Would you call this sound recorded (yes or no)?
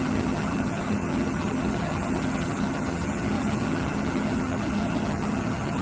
no